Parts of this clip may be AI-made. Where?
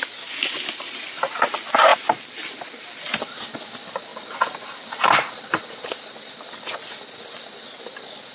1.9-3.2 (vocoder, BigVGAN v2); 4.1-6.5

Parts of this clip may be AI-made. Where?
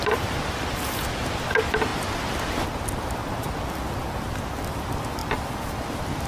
none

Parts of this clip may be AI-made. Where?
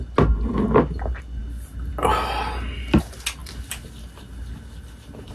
none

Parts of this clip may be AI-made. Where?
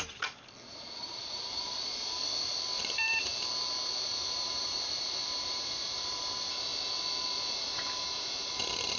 0.0-3.3 (vocoder, BigVGAN v2); 4.0-9.0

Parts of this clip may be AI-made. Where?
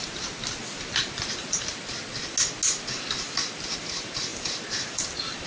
0.0-0.4 (vocoder, BigVGAN v2); 0.9-1.7; 3.8-5.5